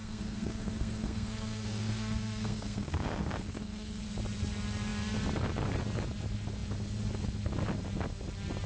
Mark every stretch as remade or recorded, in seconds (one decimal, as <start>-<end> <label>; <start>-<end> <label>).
0.0-4.0 remade; 4.0-8.7 recorded